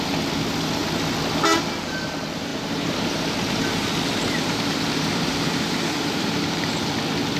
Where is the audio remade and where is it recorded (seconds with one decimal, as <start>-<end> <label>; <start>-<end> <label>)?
0.0-2.5 recorded; 2.5-6.9 remade; 6.9-7.4 recorded